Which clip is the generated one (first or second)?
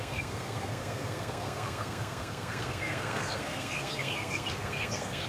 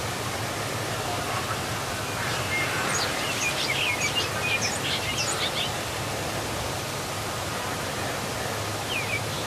first